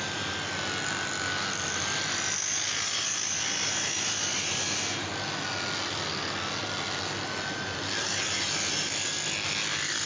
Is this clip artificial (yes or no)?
no